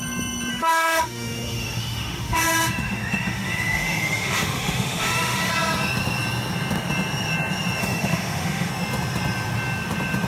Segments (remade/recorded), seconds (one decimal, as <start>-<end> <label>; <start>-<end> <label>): 0.0-0.5 recorded; 0.5-5.5 remade; 5.5-7.8 recorded; 7.8-8.7 remade; 8.7-10.3 recorded